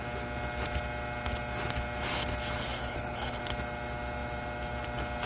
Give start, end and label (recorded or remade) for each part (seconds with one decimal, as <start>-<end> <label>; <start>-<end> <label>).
0.0-2.6 recorded; 2.6-3.4 remade; 3.4-5.3 recorded